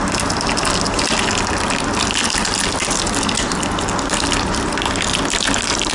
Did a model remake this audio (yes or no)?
no